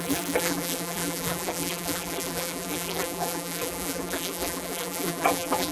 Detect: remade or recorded remade